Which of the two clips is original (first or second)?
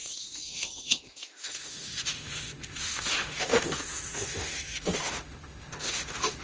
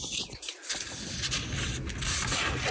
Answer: second